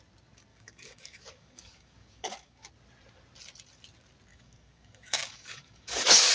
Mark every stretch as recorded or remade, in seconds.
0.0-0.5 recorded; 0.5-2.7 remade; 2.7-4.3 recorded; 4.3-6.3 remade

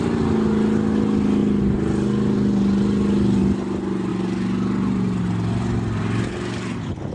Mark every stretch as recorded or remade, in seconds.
0.0-7.1 recorded

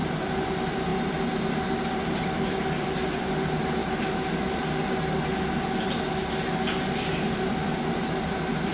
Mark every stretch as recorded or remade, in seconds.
0.0-0.9 remade; 0.9-2.4 recorded; 2.4-3.8 remade; 3.8-7.1 recorded; 7.1-8.7 remade

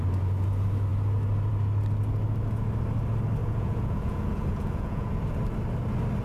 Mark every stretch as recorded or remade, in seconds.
0.0-3.4 recorded; 3.4-5.2 remade; 5.2-6.2 recorded

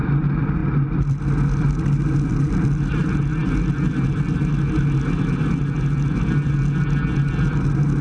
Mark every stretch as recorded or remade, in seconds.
0.0-8.0 recorded